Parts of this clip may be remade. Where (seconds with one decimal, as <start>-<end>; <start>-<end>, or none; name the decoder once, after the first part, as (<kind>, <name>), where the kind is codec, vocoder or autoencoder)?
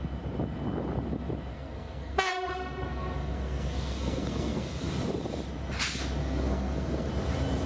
1.5-4.9 (codec, SNAC); 6.2-7.1